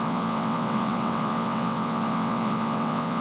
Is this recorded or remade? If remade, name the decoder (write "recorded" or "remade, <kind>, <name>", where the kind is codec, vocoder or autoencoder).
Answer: remade, vocoder, WaveNeXt